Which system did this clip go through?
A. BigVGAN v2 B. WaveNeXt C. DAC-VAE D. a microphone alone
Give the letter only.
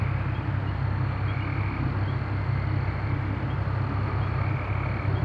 D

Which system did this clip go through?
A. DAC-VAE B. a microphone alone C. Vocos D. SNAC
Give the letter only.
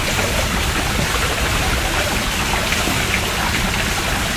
B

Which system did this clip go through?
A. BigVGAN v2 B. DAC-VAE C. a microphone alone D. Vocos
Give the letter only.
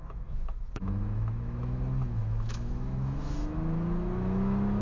B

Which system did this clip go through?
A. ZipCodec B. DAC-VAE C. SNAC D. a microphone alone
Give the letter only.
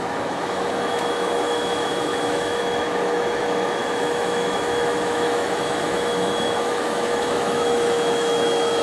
B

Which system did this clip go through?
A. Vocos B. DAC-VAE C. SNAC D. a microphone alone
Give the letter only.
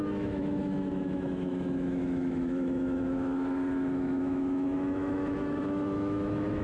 B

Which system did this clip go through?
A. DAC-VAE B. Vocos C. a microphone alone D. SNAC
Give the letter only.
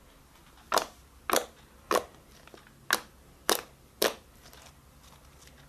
C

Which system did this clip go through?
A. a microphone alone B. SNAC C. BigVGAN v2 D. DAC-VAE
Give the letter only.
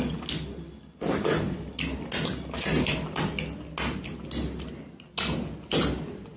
A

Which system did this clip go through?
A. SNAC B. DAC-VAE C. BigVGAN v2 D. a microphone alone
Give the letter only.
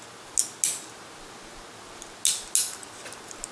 D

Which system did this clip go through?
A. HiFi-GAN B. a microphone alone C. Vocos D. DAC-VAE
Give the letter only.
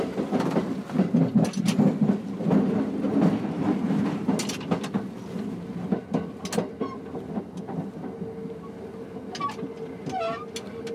B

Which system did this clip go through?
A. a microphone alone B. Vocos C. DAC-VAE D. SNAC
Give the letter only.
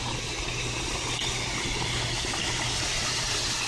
A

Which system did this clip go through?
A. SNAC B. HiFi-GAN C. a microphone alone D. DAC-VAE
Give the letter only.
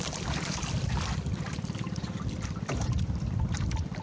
C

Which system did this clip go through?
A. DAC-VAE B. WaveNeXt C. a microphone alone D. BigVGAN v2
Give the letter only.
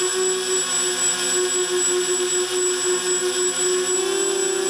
C